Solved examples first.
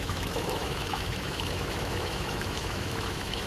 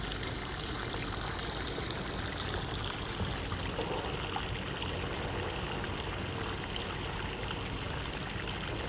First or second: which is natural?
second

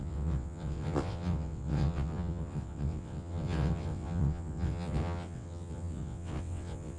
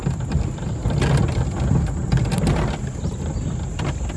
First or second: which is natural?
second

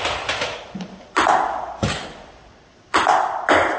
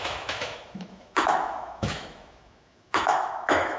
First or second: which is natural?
first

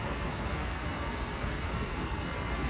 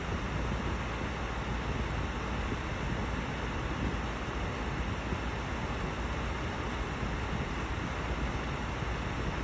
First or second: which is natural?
second